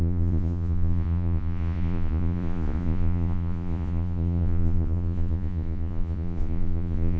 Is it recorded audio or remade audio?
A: remade